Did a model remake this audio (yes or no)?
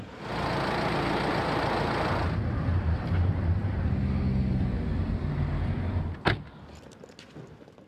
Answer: no